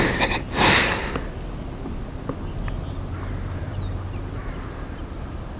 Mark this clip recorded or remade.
recorded